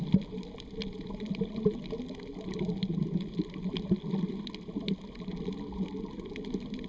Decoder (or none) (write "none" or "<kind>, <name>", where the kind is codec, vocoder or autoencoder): none